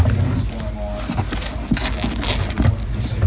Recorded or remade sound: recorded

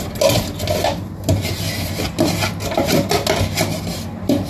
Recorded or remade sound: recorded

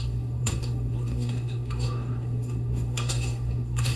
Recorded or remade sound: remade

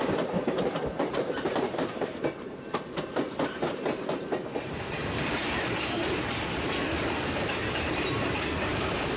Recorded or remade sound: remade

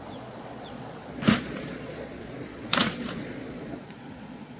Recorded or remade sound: remade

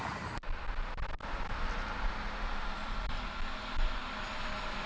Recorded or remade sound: recorded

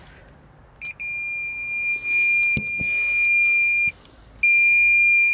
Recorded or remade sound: recorded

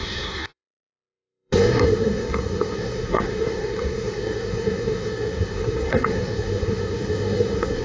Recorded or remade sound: remade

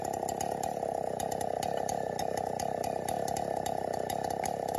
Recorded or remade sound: recorded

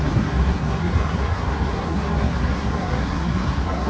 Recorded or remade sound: remade